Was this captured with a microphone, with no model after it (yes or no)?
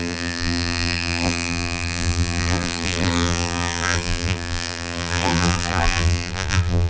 no